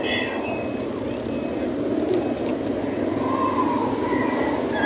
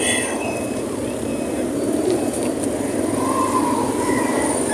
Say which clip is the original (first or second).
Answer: first